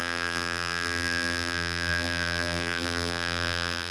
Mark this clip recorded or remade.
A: remade